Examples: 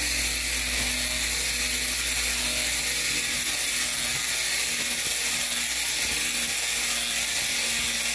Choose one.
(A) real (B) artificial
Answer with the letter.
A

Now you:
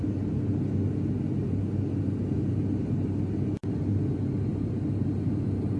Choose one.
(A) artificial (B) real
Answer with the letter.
B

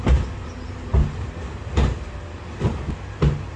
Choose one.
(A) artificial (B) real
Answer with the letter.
B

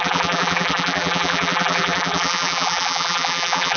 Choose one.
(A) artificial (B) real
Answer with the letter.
A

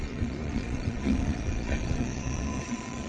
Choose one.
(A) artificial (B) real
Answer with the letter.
A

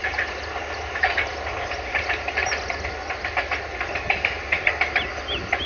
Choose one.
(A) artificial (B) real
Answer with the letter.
B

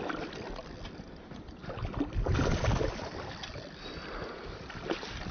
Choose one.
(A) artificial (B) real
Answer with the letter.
B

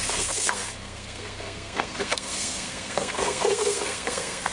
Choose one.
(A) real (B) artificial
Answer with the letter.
B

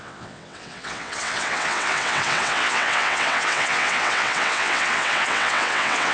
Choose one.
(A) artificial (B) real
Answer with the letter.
A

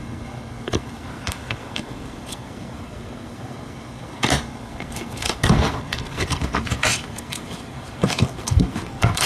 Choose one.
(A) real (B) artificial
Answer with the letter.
B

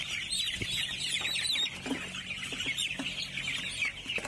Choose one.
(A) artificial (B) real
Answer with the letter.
B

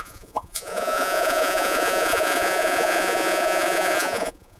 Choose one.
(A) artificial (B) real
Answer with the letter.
A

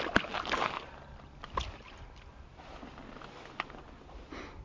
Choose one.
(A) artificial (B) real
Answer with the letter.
B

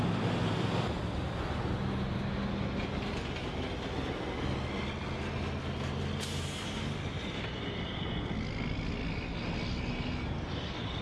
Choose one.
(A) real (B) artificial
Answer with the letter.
A